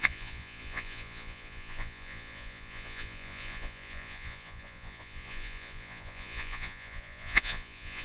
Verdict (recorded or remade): remade